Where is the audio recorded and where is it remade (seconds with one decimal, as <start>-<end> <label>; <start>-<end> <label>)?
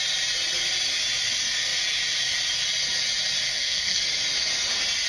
0.0-3.5 recorded; 3.5-4.0 remade; 4.0-5.1 recorded